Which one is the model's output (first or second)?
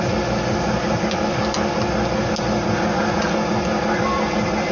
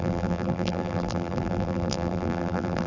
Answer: second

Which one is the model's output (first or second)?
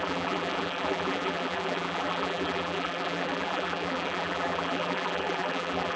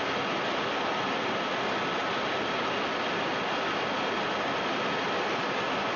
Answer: first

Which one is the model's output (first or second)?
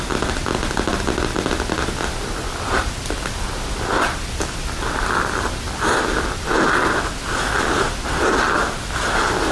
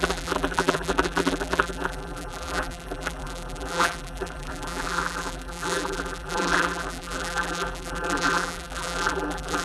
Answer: second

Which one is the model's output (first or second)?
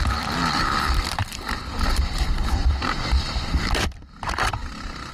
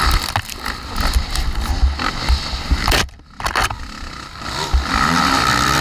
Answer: first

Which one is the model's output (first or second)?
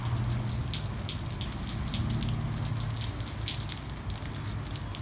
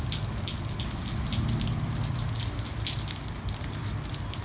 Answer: second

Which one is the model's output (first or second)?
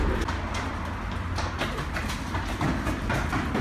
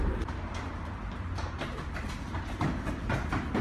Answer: second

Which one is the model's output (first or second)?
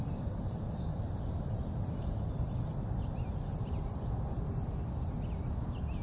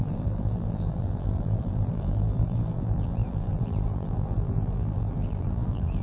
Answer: second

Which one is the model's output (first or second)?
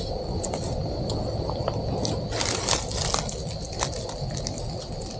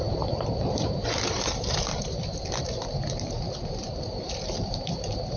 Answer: second